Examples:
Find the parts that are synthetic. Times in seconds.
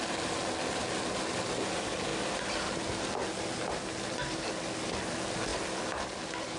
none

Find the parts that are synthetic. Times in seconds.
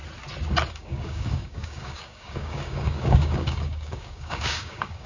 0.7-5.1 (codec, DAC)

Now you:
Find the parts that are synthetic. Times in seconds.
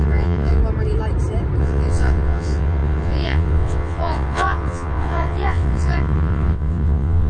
0.0-0.6 (vocoder, WaveNeXt); 1.6-7.3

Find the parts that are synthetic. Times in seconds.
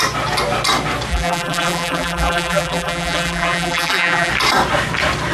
1.1-4.3 (vocoder, BigVGAN v2)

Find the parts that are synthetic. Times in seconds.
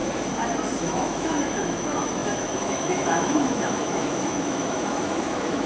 0.8-5.7 (autoencoder, DAC-VAE)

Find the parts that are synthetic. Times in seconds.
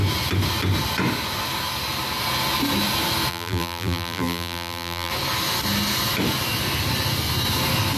3.3-5.1 (vocoder, BigVGAN v2)